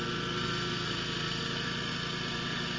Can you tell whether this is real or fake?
real